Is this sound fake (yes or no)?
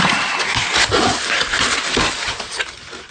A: no